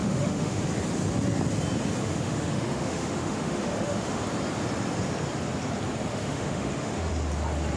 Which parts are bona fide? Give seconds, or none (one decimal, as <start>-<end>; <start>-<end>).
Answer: 0.6-2.0; 4.2-6.1; 7.1-7.8